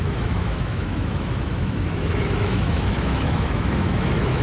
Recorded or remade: remade